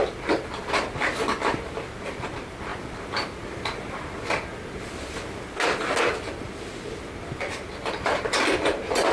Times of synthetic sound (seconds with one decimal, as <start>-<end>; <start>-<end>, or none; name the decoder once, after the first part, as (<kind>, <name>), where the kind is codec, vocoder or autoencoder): none